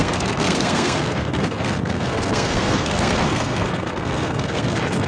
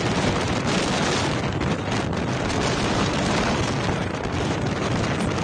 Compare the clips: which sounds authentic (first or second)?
second